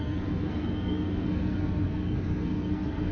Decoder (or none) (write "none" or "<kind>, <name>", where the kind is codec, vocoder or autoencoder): codec, SNAC